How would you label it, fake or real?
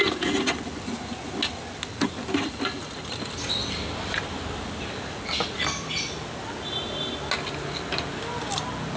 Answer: real